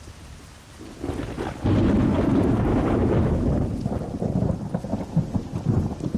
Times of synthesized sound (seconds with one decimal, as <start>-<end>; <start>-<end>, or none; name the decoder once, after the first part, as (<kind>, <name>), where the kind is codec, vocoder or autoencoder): 2.7-3.5 (autoencoder, DAC-VAE)